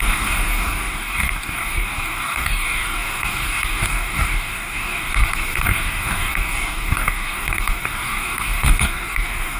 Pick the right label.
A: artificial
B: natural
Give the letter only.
A